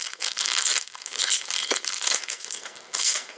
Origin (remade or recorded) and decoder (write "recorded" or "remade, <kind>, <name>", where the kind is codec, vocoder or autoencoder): remade, codec, SNAC